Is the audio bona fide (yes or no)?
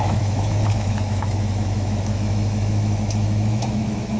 no